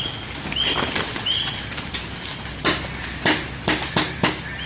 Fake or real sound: real